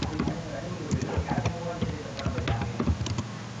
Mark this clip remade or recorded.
recorded